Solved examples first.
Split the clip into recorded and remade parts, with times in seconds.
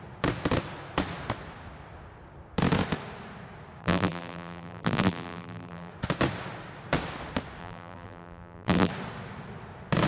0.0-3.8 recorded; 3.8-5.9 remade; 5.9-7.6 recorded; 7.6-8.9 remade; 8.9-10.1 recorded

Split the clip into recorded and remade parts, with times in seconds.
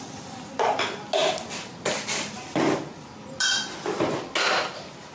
0.0-5.1 recorded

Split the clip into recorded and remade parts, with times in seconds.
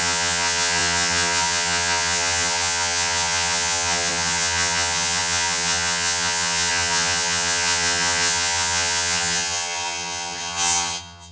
0.0-11.3 remade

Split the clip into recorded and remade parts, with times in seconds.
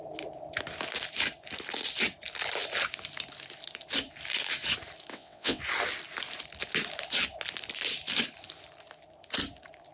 0.0-5.1 recorded; 5.1-5.6 remade; 5.6-9.9 recorded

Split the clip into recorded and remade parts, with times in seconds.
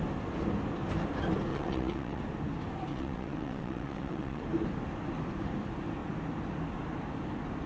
0.0-1.5 recorded; 1.5-2.2 remade; 2.2-2.9 recorded; 2.9-4.4 remade; 4.4-7.7 recorded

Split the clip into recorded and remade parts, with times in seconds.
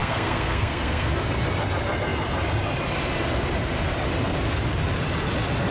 0.0-1.1 remade; 1.1-5.7 recorded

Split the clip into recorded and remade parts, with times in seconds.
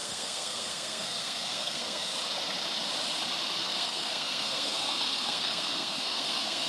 0.0-2.1 remade; 2.1-3.6 recorded; 3.6-6.7 remade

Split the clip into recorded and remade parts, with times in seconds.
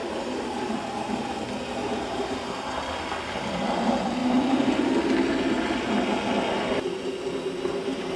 0.0-0.8 remade; 0.8-1.8 recorded; 1.8-2.5 remade; 2.5-4.2 recorded; 4.2-4.8 remade; 4.8-8.2 recorded